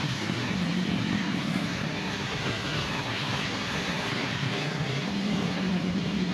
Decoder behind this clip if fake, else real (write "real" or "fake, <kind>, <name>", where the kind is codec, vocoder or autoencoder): fake, codec, SNAC